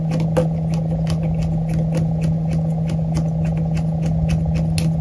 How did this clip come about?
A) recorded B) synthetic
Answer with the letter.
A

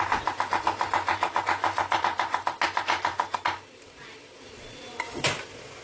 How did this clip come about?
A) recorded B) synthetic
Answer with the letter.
A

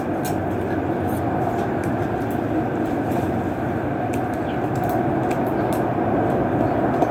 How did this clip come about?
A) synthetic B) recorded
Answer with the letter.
B